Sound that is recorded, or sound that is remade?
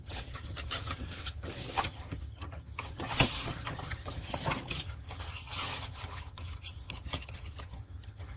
remade